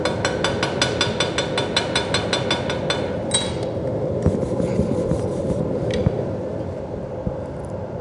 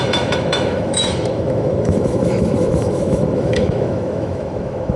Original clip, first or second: first